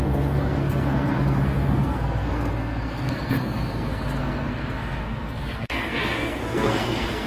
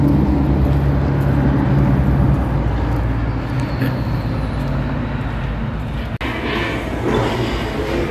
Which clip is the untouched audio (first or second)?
second